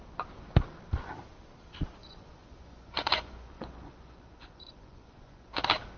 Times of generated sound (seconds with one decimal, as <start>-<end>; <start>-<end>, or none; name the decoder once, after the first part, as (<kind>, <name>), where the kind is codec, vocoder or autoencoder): 2.0-5.6 (vocoder, Vocos)